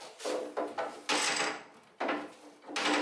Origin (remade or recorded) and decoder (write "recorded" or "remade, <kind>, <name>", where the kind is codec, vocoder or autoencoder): recorded